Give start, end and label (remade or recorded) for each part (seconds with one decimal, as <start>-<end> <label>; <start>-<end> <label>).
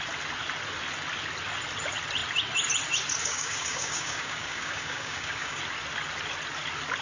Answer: 0.0-3.2 recorded; 3.2-5.6 remade; 5.6-7.0 recorded